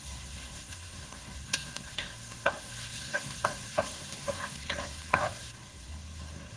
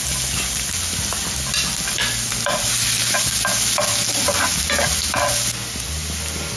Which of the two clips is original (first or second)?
second